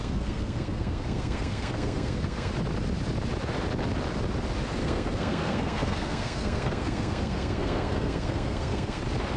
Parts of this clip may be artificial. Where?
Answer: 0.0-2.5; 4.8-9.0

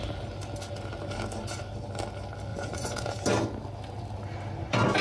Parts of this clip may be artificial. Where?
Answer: 2.5-3.1

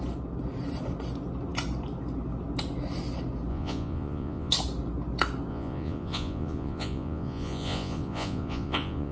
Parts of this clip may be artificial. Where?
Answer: 3.5-4.5; 5.5-9.1

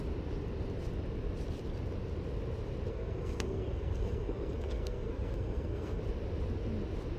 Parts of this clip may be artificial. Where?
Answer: 2.9-6.0

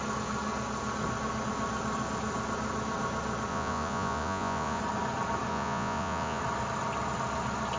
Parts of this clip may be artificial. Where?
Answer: 3.5-4.8; 5.5-6.4

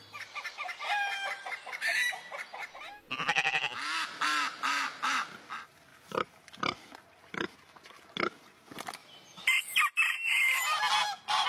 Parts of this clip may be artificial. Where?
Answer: 5.9-6.4; 9.0-10.8